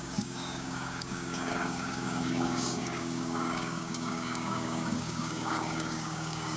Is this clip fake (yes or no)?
yes